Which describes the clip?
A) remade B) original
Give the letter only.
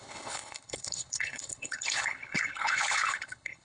A